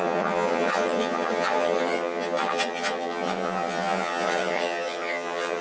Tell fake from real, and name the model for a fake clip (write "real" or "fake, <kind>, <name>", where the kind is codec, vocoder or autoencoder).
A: fake, vocoder, HiFi-GAN